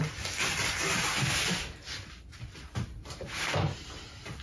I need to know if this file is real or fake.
real